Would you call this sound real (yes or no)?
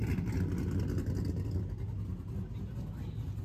yes